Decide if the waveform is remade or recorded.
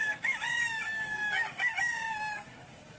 remade